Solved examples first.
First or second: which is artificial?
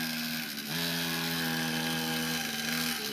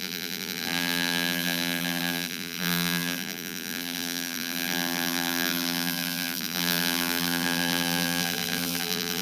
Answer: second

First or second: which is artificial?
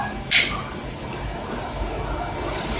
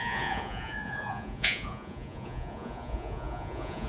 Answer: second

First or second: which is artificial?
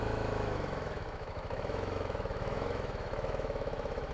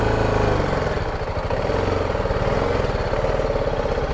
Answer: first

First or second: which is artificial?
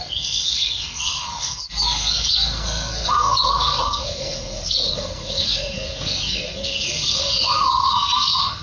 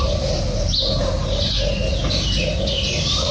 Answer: first